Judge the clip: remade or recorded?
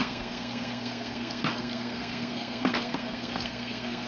remade